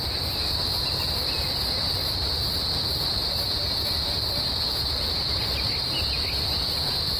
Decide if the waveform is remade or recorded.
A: recorded